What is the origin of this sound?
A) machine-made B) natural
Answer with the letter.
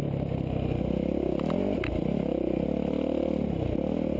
B